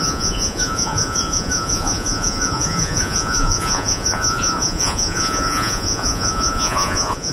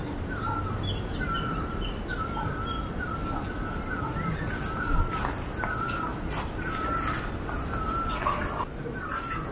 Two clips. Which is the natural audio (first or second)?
second